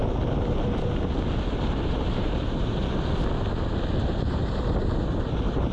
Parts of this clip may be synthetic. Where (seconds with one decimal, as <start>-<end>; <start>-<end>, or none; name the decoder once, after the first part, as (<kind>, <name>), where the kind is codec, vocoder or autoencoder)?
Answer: 1.9-2.8 (vocoder, BigVGAN v2); 4.0-5.7